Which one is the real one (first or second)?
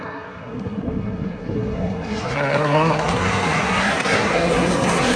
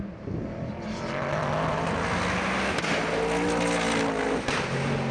second